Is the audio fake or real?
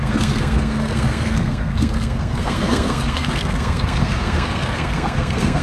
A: fake